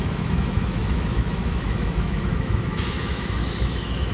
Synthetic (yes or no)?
yes